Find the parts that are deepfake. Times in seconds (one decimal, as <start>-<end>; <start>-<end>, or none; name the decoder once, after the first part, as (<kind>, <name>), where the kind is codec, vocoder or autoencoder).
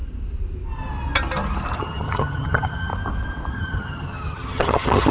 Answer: 1.8-2.9 (vocoder, HiFi-GAN); 3.5-5.1